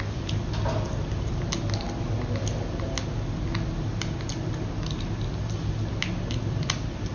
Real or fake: real